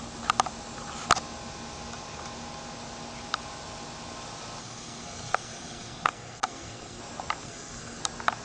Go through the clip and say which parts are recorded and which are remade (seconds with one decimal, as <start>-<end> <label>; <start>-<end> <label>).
0.0-4.6 recorded; 4.6-7.0 remade; 7.0-7.4 recorded; 7.4-8.0 remade; 8.0-8.4 recorded

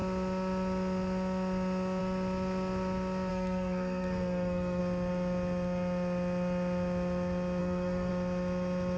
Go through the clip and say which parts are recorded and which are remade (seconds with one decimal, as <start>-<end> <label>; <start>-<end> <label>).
0.0-3.3 recorded; 3.3-4.8 remade; 4.8-7.6 recorded; 7.6-8.1 remade; 8.1-9.0 recorded

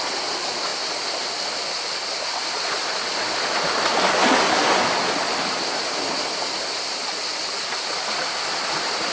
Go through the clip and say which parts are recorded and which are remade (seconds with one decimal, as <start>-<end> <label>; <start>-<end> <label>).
0.0-9.1 recorded

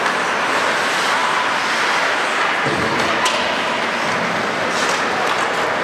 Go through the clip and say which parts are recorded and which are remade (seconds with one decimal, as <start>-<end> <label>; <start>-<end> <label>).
0.0-5.8 recorded

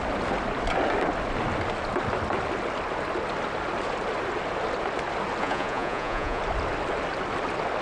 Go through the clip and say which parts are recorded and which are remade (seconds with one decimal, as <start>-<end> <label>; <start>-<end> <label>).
0.0-5.4 recorded; 5.4-6.4 remade; 6.4-7.8 recorded

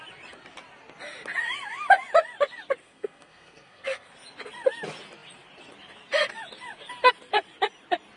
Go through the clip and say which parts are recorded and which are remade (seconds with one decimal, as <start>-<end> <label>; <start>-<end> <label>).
0.0-2.8 recorded; 2.8-4.1 remade; 4.1-8.2 recorded

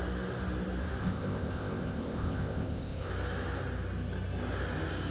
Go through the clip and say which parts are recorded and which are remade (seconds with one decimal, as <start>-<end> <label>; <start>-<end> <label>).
0.0-1.0 recorded; 1.0-3.1 remade; 3.1-5.1 recorded

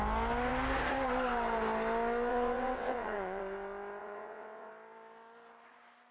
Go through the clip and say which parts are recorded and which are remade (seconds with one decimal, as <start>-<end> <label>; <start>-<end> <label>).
0.0-2.3 recorded; 2.3-3.4 remade; 3.4-4.0 recorded; 4.0-4.7 remade; 4.7-6.1 recorded